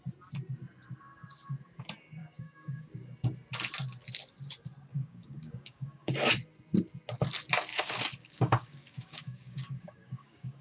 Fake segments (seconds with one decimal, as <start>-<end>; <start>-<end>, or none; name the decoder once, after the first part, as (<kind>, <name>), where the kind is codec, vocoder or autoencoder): 2.2-2.9 (codec, DAC); 4.9-6.3; 7.7-10.6

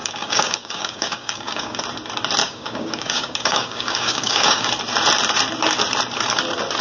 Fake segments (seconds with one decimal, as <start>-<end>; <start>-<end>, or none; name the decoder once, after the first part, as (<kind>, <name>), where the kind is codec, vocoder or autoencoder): 0.0-1.8 (codec, DAC); 2.4-4.7

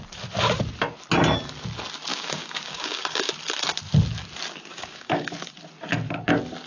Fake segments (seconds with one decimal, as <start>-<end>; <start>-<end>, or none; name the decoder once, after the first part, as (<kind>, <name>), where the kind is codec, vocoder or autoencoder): 2.1-3.3 (codec, DAC); 4.7-5.3

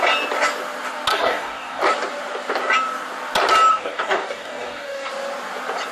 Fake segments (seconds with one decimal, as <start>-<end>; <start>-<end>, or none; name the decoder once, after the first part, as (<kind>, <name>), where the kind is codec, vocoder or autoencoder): 1.1-1.8 (codec, DAC); 3.7-5.1

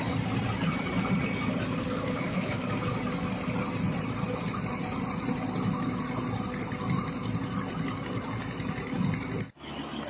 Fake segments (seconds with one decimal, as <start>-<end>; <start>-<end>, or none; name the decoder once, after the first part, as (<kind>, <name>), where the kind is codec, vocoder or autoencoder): 1.8-2.8 (codec, DAC)

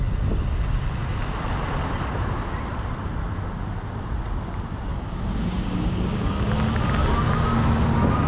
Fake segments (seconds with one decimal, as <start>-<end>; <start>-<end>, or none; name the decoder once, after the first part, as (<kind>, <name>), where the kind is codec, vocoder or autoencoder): 4.9-6.5 (codec, DAC)

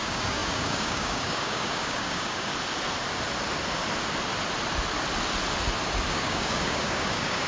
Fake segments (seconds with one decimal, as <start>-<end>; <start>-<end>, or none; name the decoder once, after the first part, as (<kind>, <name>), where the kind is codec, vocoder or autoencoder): 0.0-2.5 (codec, DAC); 6.1-7.5